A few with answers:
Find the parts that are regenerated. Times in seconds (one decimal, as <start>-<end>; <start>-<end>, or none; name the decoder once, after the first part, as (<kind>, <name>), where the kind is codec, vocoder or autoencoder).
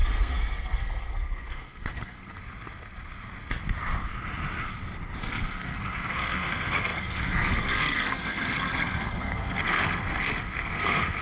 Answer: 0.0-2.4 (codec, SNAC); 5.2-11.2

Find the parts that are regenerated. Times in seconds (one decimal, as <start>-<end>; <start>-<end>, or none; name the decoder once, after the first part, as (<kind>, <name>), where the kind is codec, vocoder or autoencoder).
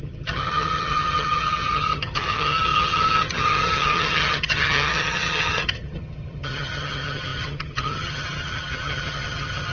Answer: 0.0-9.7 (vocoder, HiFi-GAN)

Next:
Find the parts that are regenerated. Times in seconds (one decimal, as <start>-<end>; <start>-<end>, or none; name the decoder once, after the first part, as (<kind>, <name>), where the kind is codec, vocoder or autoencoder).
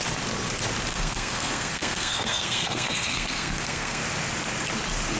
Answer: 0.9-4.0 (codec, SNAC)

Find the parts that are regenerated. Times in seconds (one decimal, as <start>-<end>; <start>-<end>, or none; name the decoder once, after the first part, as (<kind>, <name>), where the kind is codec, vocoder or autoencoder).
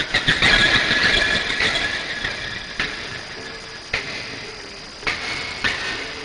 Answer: none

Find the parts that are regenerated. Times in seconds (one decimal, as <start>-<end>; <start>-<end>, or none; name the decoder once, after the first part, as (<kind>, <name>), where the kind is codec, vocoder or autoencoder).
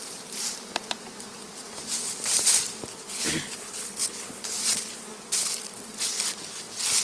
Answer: 2.9-4.6 (codec, HILCodec)